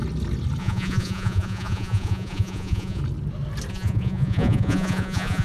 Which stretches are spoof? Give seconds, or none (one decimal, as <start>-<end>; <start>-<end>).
0.6-3.0; 3.7-5.4